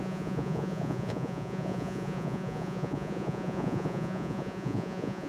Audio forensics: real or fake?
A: fake